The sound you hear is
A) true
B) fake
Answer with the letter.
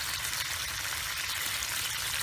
A